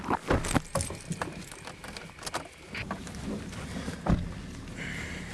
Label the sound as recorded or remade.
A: recorded